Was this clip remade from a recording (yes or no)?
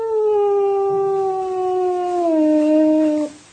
no